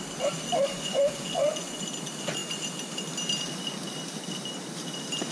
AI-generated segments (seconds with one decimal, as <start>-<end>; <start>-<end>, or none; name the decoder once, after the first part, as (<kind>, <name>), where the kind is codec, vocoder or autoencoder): 0.7-1.8 (vocoder, Vocos)